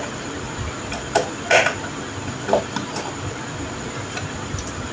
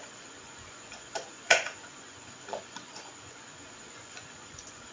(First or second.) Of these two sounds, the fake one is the second